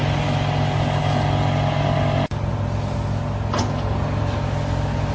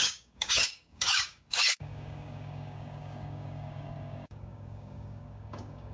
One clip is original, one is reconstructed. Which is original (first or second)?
first